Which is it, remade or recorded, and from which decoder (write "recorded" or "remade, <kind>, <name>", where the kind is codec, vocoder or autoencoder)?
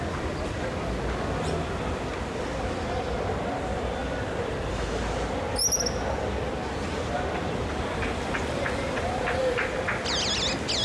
recorded